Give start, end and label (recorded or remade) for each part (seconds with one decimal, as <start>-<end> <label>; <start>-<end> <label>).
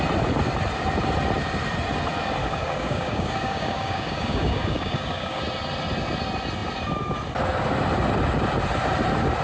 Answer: 0.0-2.4 recorded; 2.4-5.4 remade; 5.4-9.4 recorded